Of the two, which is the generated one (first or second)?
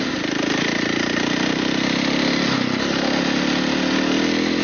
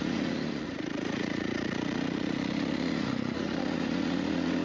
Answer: second